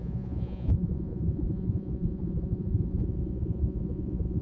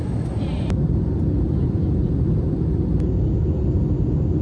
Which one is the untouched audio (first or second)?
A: second